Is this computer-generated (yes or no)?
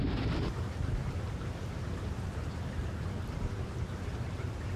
yes